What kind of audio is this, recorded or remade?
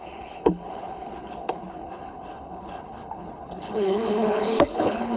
remade